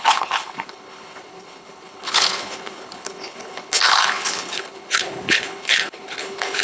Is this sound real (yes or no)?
no